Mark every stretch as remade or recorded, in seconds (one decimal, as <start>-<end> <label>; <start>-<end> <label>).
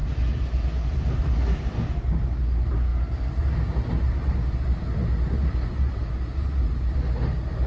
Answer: 0.0-2.9 recorded; 2.9-3.4 remade; 3.4-7.7 recorded